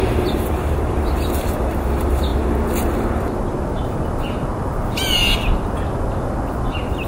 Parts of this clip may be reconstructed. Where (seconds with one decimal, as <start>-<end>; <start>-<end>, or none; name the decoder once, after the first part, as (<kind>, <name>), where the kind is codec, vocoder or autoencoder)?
0.0-2.3 (vocoder, BigVGAN v2); 3.2-4.5; 6.1-7.1